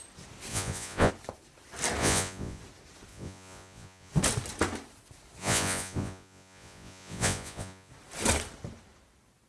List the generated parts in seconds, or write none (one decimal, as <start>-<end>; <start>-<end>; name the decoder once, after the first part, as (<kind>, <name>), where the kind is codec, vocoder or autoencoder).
0.5-1.1 (vocoder, Vocos); 2.0-2.6; 3.1-4.1; 5.4-7.9